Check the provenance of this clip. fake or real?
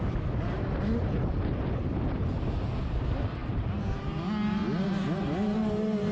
real